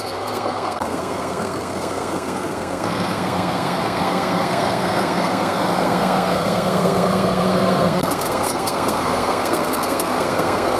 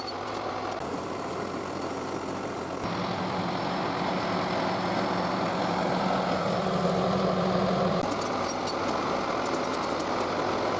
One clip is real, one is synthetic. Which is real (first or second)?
second